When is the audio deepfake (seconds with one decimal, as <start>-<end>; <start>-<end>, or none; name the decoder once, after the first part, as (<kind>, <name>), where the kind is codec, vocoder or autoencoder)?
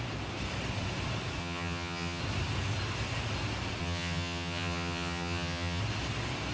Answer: 1.4-2.2 (vocoder, HiFi-GAN); 3.8-5.8